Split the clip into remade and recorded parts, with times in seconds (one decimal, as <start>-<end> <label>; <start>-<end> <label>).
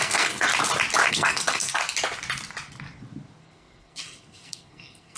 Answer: 0.0-0.5 remade; 0.5-1.1 recorded; 1.1-1.8 remade; 1.8-3.4 recorded; 3.4-5.2 remade